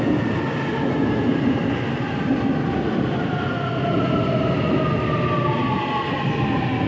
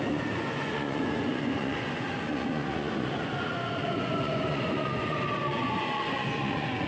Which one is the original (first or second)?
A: first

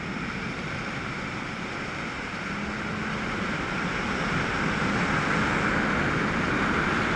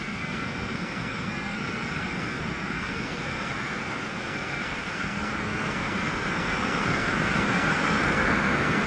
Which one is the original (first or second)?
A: first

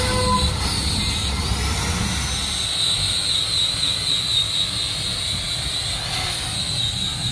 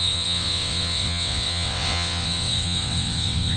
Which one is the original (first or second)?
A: first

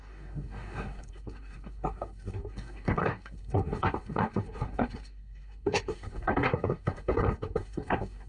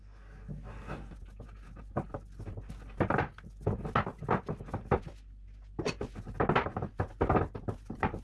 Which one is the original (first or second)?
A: second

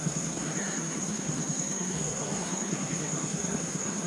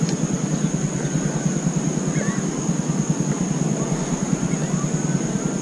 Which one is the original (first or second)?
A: second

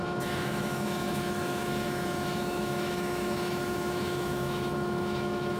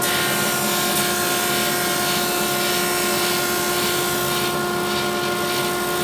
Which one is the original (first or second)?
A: second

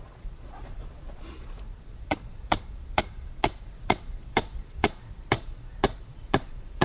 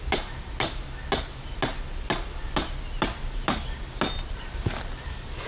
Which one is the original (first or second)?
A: second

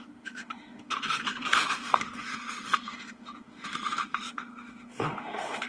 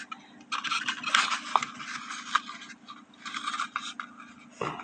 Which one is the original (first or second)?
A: second